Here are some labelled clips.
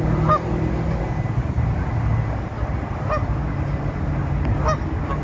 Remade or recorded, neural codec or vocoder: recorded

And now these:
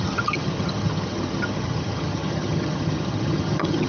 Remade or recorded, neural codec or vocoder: remade, vocoder, HiFi-GAN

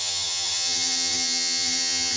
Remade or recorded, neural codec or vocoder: remade, vocoder, HiFi-GAN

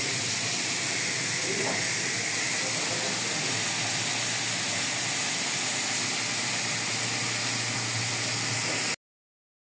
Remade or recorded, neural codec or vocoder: recorded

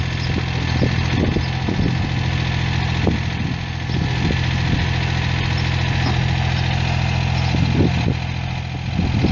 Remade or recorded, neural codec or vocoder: recorded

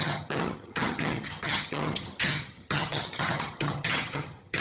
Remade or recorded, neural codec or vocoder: remade, vocoder, HiFi-GAN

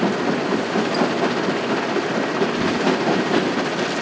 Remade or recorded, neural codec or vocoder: recorded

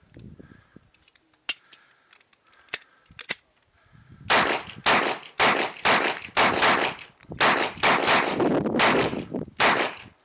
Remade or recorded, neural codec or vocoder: recorded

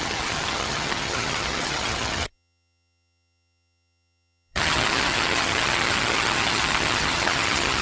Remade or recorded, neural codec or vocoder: remade, vocoder, HiFi-GAN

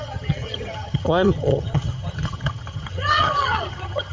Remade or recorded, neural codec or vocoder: remade, vocoder, HiFi-GAN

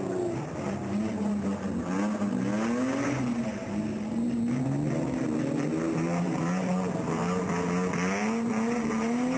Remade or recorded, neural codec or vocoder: recorded